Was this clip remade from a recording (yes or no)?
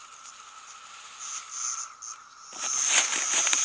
no